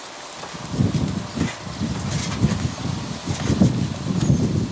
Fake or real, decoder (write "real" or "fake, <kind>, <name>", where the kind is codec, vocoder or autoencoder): real